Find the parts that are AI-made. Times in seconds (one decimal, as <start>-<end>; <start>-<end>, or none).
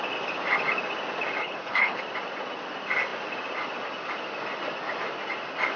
1.4-2.0